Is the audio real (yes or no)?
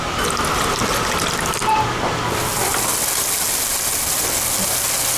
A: yes